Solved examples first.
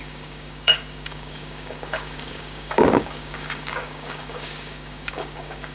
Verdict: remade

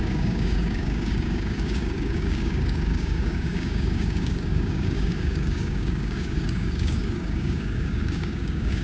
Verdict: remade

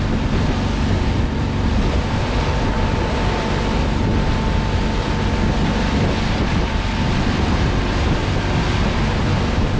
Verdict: recorded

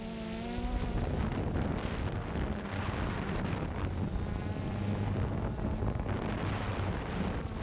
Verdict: recorded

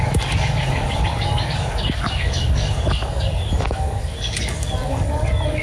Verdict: remade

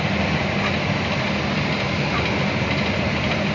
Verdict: recorded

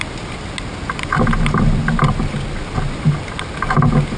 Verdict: recorded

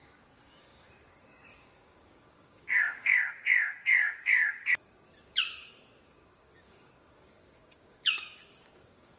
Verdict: remade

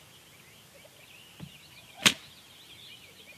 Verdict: recorded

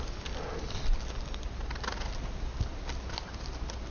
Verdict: recorded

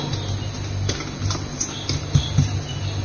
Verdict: recorded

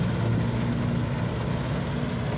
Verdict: recorded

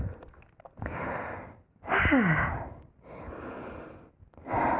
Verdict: recorded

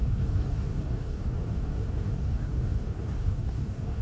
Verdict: remade